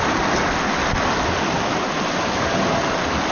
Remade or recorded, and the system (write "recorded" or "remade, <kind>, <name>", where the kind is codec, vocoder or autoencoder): recorded